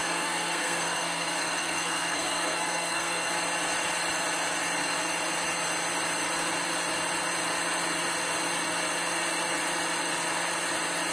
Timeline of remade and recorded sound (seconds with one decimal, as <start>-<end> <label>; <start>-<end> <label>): 0.0-3.3 remade; 3.3-11.1 recorded

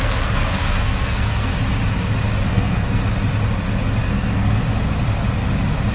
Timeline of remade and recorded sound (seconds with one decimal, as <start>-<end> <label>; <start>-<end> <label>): 0.0-1.5 remade; 1.5-2.5 recorded; 2.5-3.0 remade; 3.0-4.0 recorded; 4.0-4.6 remade; 4.6-5.9 recorded

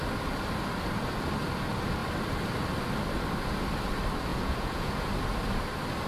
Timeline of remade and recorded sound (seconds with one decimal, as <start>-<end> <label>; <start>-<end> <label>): 0.0-4.3 recorded; 4.3-5.1 remade; 5.1-6.1 recorded

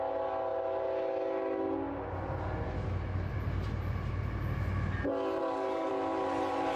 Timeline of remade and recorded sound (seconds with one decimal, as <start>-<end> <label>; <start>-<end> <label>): 0.0-5.4 recorded; 5.4-5.9 remade; 5.9-6.8 recorded

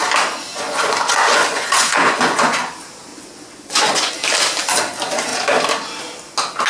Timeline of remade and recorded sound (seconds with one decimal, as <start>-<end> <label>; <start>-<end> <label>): 0.0-0.5 recorded; 0.5-2.7 remade; 2.7-3.1 recorded; 3.1-4.1 remade; 4.1-6.7 recorded

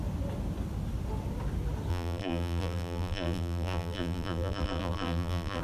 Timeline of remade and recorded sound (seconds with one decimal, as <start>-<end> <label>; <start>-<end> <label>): 0.0-1.9 recorded; 1.9-5.6 remade

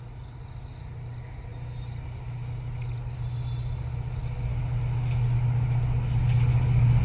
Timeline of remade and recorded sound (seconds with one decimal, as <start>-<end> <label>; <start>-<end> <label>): 0.0-7.0 recorded